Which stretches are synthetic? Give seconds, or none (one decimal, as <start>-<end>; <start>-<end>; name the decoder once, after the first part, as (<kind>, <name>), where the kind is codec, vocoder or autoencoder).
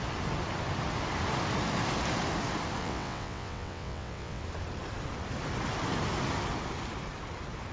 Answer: 2.8-4.4 (vocoder, WaveNeXt)